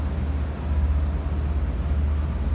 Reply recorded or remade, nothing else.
recorded